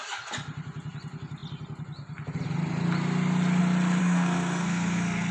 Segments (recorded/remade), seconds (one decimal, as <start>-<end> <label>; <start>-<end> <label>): 0.0-4.0 recorded; 4.0-5.3 remade